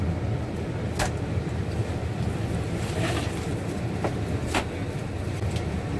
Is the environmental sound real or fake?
real